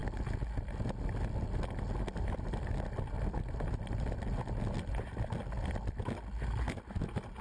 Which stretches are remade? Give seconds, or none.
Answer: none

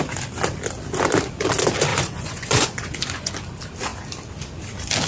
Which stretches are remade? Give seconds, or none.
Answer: 1.9-3.3 (vocoder, Vocos)

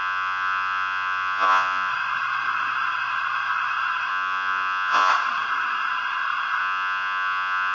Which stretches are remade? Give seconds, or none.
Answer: 0.0-1.9 (vocoder, Vocos); 4.1-5.1; 6.6-7.7